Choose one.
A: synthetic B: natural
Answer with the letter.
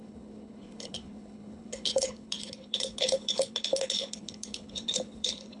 A